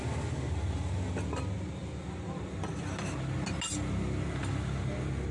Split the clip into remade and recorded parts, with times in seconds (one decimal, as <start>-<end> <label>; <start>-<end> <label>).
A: 0.0-5.3 recorded